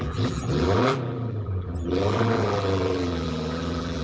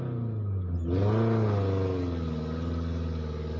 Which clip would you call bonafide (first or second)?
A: second